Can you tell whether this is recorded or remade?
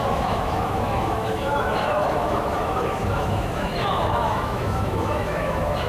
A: remade